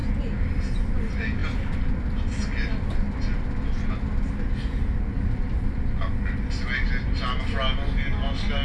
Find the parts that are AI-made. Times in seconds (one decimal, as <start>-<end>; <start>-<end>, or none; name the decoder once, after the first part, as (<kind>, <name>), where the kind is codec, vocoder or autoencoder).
none